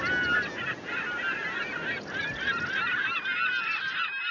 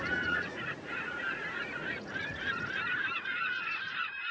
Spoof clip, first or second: second